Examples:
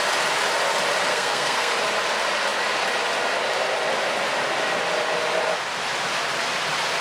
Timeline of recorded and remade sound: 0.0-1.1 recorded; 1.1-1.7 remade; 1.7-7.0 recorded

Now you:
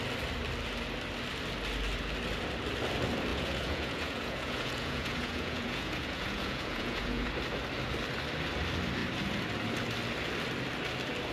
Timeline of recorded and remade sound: 0.0-3.3 recorded; 3.3-7.3 remade; 7.3-11.3 recorded

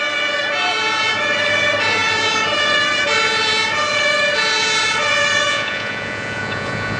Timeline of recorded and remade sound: 0.0-5.5 recorded; 5.5-7.0 remade

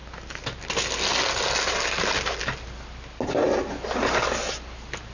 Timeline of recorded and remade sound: 0.0-5.1 recorded

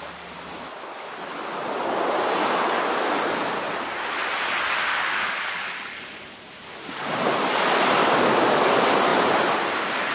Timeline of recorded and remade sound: 0.0-4.9 recorded; 4.9-6.0 remade; 6.0-8.0 recorded; 8.0-8.7 remade; 8.7-10.1 recorded

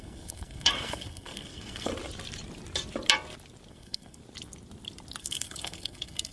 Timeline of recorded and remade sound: 0.0-1.9 remade; 1.9-3.7 recorded; 3.7-4.2 remade; 4.2-5.2 recorded; 5.2-6.3 remade

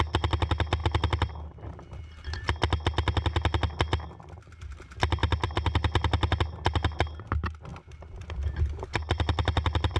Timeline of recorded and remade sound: 0.0-0.8 recorded; 0.8-2.6 remade; 2.6-5.2 recorded; 5.2-6.4 remade; 6.4-7.7 recorded; 7.7-10.0 remade